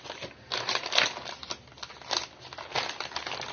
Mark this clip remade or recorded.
recorded